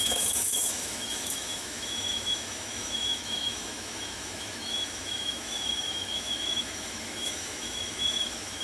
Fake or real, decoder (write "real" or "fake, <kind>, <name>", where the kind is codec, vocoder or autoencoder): fake, autoencoder, DAC-VAE